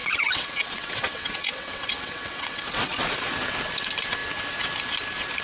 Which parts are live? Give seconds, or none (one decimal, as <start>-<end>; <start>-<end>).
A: 3.0-5.4